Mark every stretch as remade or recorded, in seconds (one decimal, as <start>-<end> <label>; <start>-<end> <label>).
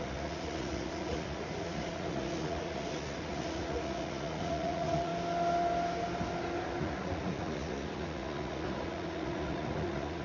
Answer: 0.0-5.1 remade; 5.1-6.8 recorded; 6.8-10.2 remade